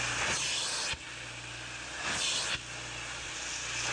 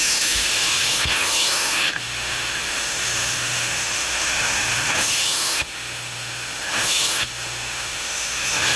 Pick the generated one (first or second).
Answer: second